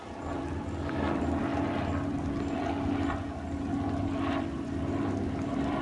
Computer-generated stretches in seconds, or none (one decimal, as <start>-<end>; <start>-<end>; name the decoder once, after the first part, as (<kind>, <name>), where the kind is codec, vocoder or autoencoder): 0.0-1.5 (vocoder, BigVGAN v2); 5.0-5.8